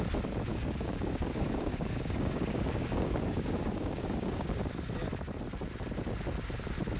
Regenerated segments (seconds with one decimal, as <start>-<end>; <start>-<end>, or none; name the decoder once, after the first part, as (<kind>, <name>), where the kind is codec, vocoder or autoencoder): 0.5-4.7 (codec, DAC)